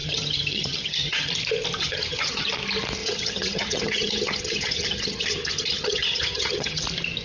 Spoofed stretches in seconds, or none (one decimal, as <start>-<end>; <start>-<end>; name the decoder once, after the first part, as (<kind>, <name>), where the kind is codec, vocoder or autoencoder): 0.0-1.3 (vocoder, HiFi-GAN); 1.8-2.5; 3.0-6.8

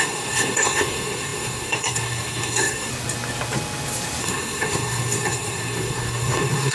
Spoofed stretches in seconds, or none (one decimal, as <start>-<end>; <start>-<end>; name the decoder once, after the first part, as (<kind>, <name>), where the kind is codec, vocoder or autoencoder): 0.0-2.9 (codec, SNAC); 4.2-6.7

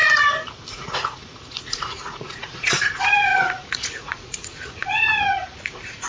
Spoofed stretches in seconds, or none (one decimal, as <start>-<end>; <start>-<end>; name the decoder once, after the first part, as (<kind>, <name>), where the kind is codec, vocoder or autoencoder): 0.7-6.1 (vocoder, Vocos)

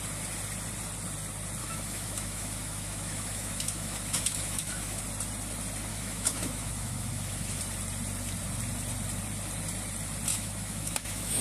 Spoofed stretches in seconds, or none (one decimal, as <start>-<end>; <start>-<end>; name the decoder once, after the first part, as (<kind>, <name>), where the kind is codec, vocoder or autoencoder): 1.6-5.0 (autoencoder, DAC-VAE); 5.9-7.6; 10.3-11.4